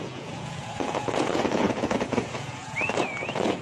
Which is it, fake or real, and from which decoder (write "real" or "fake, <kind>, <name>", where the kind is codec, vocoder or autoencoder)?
fake, vocoder, Vocos